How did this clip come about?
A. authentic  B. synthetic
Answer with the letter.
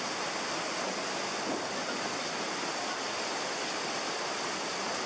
A